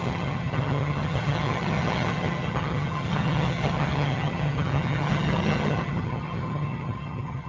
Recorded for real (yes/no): no